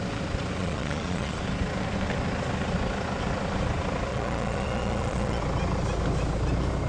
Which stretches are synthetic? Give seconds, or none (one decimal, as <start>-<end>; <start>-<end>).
0.6-1.4; 4.1-5.4